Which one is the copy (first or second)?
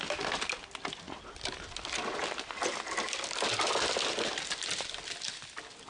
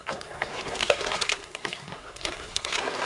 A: second